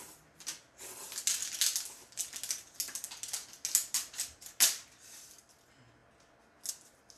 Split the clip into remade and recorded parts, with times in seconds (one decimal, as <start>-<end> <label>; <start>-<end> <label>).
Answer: 0.0-7.2 recorded